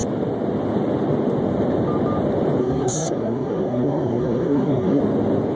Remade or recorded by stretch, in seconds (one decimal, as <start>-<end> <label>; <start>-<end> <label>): 0.0-2.6 recorded; 2.6-5.0 remade; 5.0-5.6 recorded